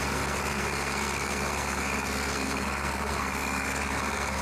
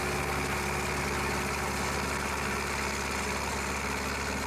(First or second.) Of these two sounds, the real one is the second